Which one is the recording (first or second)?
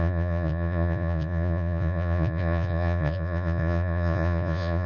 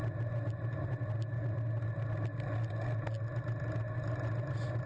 second